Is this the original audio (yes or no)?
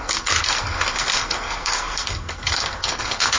no